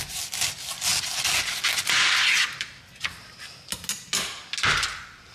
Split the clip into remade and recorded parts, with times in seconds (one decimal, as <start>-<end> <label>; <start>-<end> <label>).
0.0-5.3 recorded